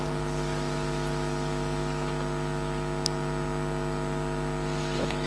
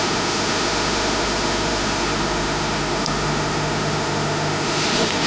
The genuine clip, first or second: first